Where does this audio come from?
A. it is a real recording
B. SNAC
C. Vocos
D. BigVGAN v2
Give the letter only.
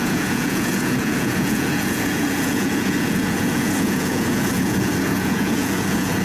C